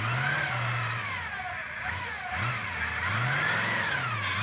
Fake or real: real